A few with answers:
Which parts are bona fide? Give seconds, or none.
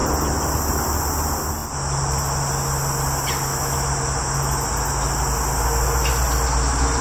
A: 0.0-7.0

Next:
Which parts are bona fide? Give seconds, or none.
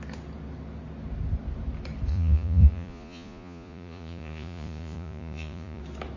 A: 0.0-2.1; 5.8-6.2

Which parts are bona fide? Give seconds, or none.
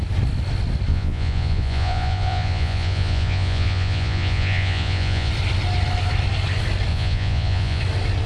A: 0.0-0.9; 5.3-6.9; 7.8-8.3